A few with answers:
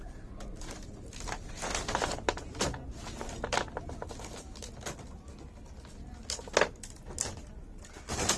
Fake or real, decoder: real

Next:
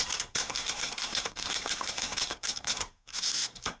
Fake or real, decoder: fake, codec, SNAC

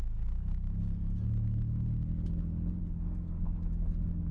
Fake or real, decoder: real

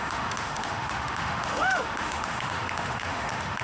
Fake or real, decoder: fake, autoencoder, DAC-VAE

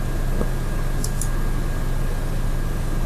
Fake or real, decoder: real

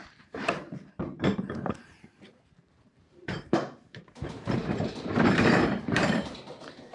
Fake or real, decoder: fake, vocoder, BigVGAN v2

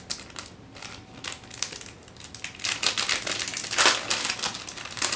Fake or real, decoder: real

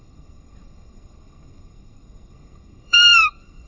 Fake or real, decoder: fake, codec, SNAC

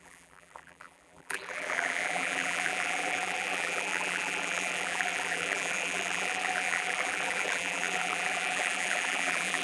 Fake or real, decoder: fake, vocoder, BigVGAN v2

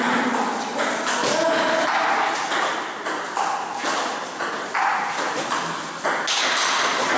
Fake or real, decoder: real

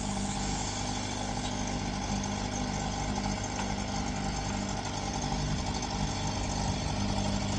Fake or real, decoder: real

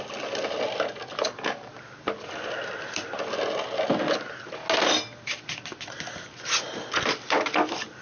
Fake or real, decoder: real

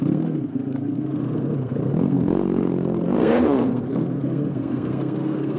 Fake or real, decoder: fake, codec, SNAC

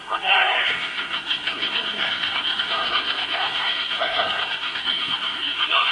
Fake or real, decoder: fake, codec, SNAC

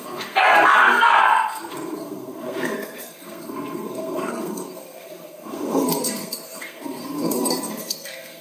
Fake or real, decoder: fake, codec, SNAC